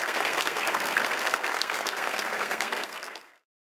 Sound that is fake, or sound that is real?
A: fake